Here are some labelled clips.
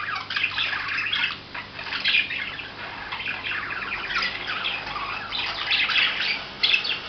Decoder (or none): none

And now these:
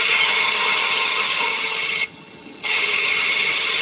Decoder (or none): vocoder, HiFi-GAN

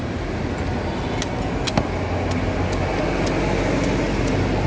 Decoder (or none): none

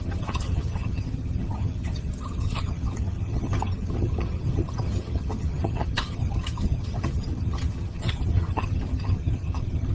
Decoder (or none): vocoder, HiFi-GAN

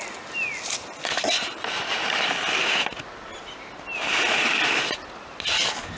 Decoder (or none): none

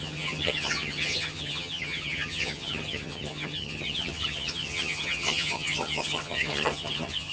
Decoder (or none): vocoder, HiFi-GAN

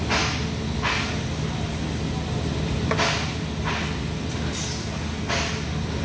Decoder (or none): none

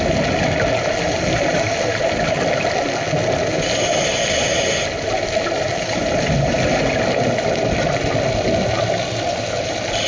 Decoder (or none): none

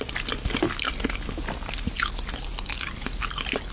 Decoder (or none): none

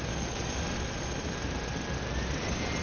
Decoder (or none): none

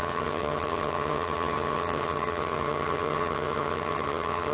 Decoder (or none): vocoder, HiFi-GAN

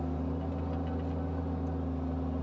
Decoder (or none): none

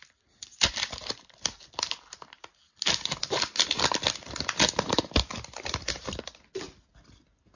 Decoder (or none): none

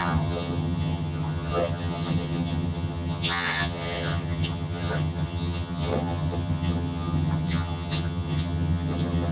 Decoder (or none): vocoder, HiFi-GAN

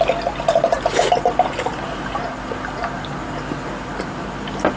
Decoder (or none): none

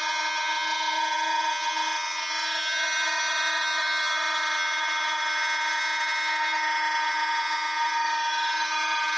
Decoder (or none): vocoder, HiFi-GAN